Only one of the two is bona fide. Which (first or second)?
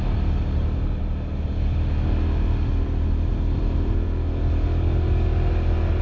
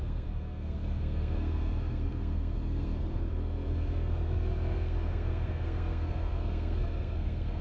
first